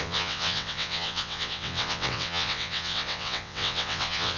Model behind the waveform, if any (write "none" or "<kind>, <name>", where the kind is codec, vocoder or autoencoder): vocoder, WaveNeXt